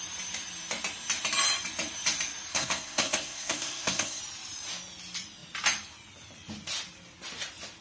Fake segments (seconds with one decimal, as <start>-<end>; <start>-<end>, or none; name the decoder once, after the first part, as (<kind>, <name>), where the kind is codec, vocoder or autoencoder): 2.5-4.2 (codec, SNAC)